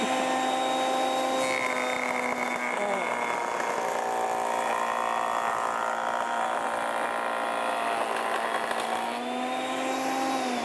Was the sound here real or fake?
real